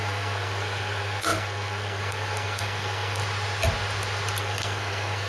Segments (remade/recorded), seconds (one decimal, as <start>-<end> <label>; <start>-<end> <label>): 0.0-3.2 remade; 3.2-4.4 recorded; 4.4-5.3 remade